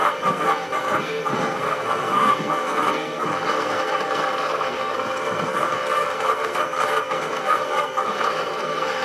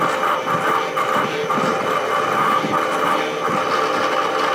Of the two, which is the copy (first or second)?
first